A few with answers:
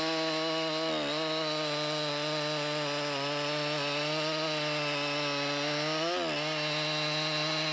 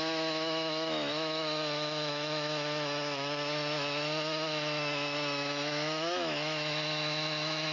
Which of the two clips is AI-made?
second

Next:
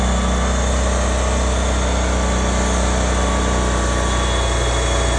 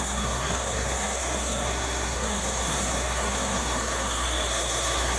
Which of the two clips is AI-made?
second